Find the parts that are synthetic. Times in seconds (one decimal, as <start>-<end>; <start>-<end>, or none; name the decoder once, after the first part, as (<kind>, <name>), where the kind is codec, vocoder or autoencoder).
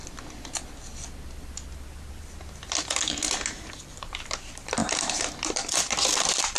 3.7-6.6 (vocoder, BigVGAN v2)